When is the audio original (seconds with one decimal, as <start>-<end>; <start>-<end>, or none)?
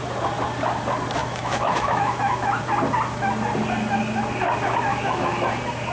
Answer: 0.0-1.2; 2.6-4.9; 5.5-5.9